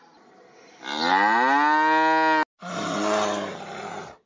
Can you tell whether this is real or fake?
real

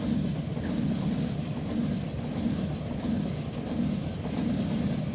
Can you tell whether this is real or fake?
real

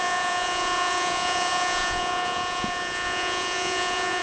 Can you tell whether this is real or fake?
fake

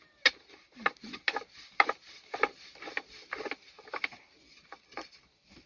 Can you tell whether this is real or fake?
real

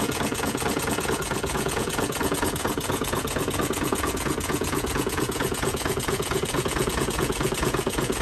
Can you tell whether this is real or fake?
fake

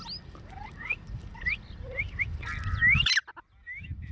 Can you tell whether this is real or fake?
real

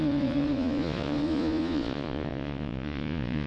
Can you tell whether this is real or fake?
fake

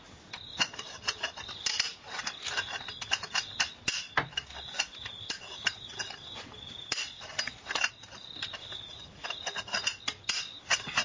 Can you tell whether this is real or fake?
real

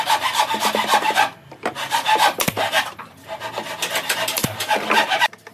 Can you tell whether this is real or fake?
real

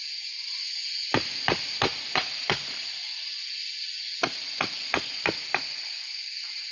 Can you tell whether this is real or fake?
real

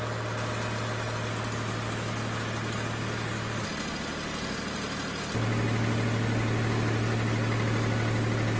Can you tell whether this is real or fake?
real